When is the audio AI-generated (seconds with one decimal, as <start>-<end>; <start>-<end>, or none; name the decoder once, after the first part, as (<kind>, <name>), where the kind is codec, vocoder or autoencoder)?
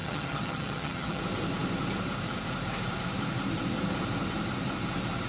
0.0-1.2 (vocoder, HiFi-GAN)